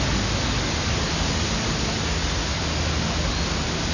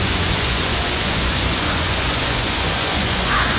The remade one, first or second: second